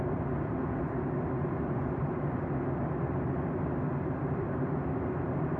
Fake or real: real